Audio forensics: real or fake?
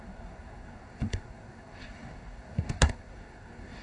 fake